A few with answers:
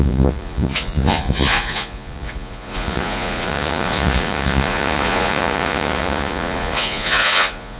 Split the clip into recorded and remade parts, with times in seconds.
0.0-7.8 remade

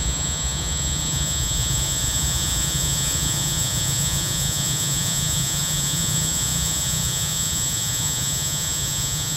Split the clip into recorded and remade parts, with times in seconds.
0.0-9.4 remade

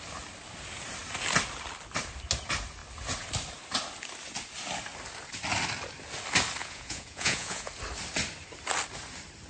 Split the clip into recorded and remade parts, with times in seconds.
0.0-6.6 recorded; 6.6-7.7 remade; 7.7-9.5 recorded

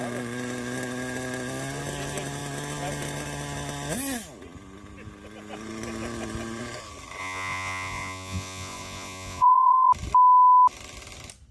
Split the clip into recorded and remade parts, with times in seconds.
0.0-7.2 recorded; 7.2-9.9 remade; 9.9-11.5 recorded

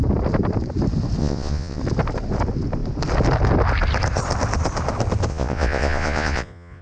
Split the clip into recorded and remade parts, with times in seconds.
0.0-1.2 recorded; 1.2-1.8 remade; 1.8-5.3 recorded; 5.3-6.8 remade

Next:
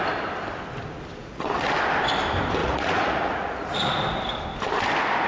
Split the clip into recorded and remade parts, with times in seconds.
0.0-1.2 recorded; 1.2-1.7 remade; 1.7-2.6 recorded; 2.6-3.9 remade; 3.9-5.3 recorded

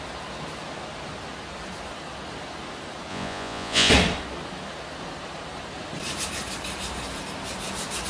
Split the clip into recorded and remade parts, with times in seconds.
0.0-3.1 recorded; 3.1-3.9 remade; 3.9-8.1 recorded

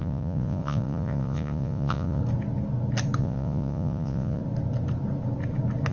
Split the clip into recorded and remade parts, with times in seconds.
0.0-2.2 remade; 2.2-3.2 recorded; 3.2-4.4 remade; 4.4-5.9 recorded